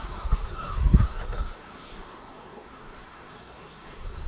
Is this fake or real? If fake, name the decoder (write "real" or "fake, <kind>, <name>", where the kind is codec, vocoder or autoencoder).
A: fake, codec, SNAC